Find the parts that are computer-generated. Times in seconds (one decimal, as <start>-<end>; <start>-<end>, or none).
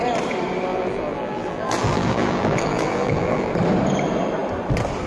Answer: 0.7-3.5